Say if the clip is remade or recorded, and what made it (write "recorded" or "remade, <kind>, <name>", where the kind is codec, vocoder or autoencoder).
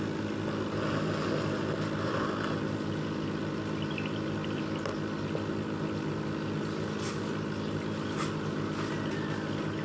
recorded